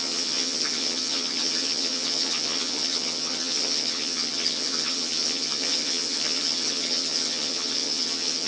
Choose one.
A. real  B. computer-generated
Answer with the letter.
B